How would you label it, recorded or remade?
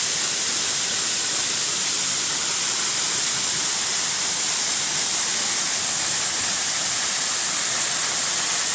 recorded